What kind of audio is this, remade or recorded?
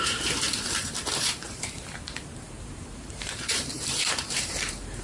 remade